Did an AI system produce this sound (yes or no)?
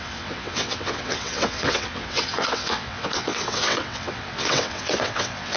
yes